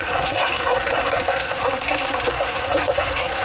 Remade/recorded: remade